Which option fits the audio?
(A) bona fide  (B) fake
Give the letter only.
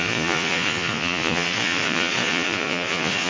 B